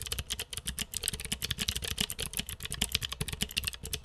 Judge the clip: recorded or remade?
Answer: recorded